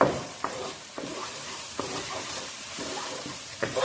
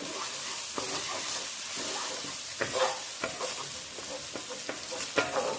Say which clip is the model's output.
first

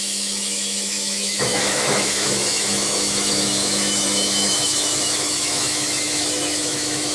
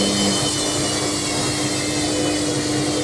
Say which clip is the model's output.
first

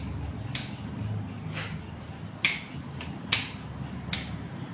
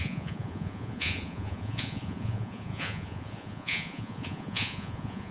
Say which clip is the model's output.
second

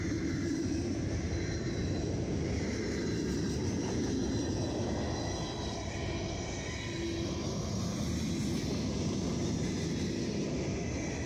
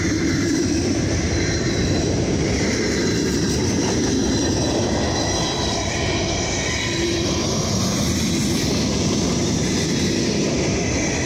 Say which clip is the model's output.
second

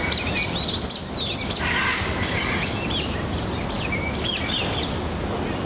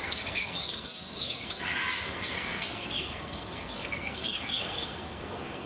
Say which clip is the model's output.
second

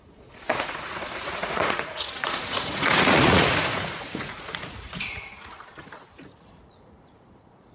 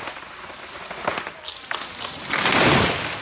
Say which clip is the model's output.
first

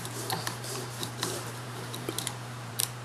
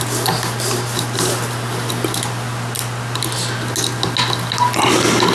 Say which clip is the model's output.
first